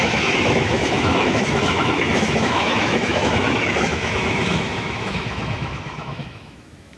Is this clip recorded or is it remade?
remade